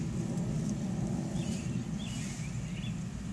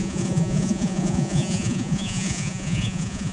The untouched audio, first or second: first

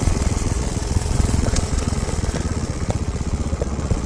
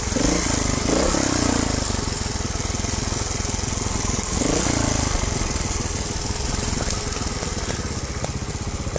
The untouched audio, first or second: second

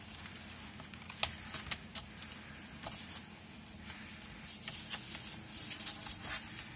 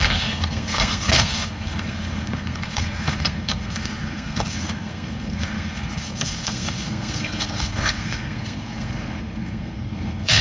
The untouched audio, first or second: first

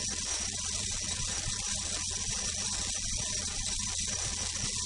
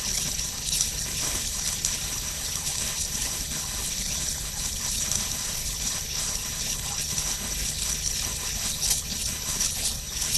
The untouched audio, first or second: first